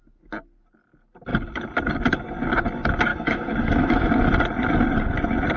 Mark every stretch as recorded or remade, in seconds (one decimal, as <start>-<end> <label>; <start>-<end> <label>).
0.0-3.1 recorded; 3.1-4.1 remade; 4.1-5.6 recorded